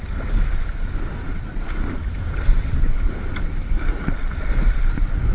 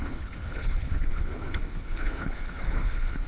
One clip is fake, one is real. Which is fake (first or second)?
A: second